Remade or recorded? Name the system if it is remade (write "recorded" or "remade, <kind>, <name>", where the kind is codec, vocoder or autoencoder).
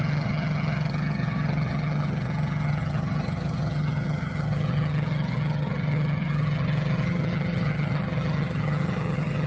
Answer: remade, vocoder, HiFi-GAN